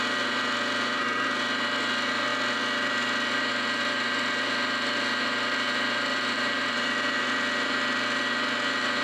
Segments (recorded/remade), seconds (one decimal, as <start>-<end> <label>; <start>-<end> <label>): 0.0-6.1 recorded; 6.1-6.9 remade; 6.9-9.0 recorded